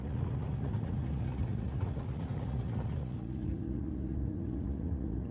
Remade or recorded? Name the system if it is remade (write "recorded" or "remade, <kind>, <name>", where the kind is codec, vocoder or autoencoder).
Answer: remade, vocoder, Vocos